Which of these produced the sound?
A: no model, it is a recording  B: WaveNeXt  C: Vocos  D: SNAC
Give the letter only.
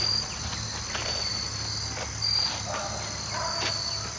A